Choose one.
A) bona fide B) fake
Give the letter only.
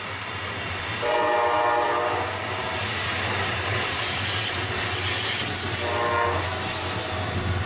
A